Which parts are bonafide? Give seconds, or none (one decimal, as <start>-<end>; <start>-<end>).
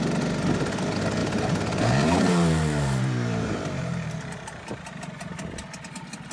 0.0-1.2; 4.2-6.3